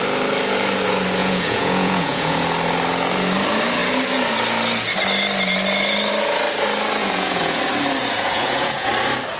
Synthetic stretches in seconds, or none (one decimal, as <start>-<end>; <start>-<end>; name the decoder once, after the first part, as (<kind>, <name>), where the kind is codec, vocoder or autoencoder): 1.2-2.4 (vocoder, Vocos); 7.0-7.6; 8.0-8.9